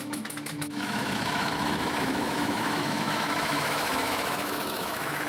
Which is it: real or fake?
fake